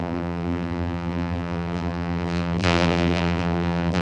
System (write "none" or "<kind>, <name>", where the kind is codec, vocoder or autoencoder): vocoder, BigVGAN v2